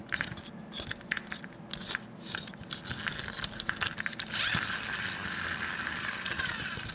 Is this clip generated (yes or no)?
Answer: no